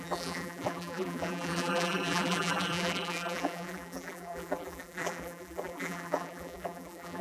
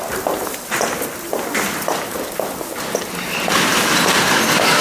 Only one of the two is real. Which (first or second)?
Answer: second